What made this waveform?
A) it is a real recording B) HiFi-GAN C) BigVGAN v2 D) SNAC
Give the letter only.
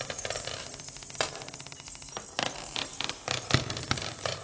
A